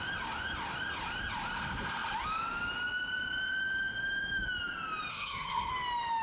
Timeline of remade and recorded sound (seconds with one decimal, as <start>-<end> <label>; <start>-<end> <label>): 0.0-5.1 recorded; 5.1-5.7 remade; 5.7-6.2 recorded